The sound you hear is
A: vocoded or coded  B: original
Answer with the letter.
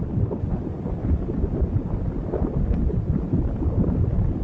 B